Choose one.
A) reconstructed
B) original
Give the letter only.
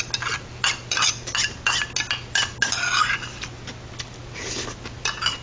B